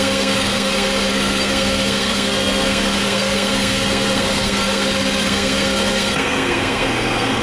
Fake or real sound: fake